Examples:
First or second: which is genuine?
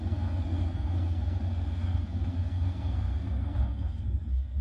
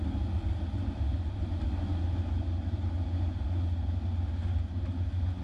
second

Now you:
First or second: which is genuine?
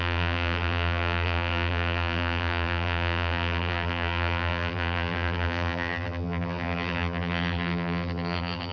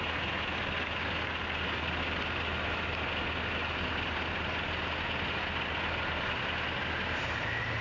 second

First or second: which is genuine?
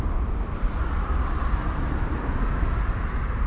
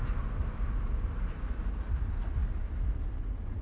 second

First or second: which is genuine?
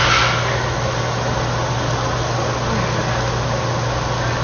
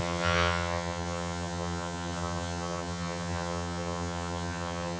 first